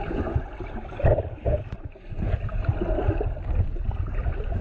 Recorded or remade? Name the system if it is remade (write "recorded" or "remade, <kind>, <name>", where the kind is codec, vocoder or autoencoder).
recorded